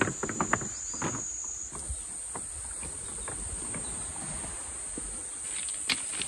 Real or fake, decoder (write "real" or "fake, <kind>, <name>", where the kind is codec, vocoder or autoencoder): real